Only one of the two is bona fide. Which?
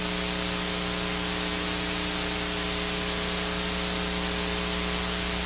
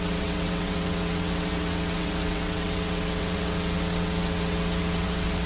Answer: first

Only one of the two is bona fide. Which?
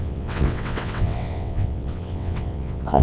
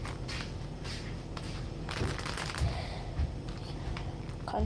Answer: second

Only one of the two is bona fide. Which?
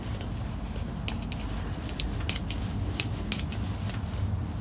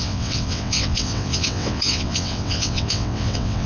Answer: first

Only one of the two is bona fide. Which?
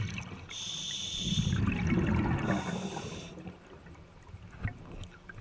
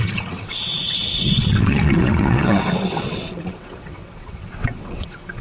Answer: first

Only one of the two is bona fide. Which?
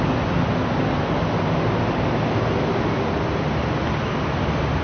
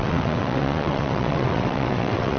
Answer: first